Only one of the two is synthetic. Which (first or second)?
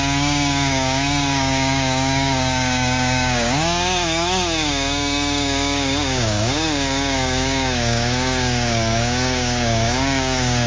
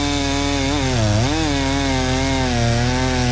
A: first